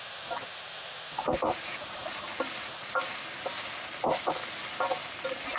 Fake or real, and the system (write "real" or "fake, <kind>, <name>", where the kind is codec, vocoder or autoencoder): real